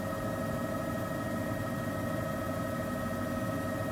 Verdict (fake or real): real